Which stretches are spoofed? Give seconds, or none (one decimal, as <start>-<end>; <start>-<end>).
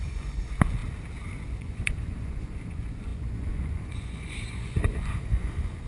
0.0-0.8; 1.5-5.9